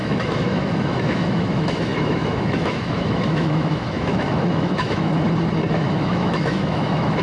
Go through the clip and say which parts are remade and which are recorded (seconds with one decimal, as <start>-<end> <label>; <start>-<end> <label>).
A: 0.0-5.1 remade; 5.1-5.7 recorded; 5.7-7.2 remade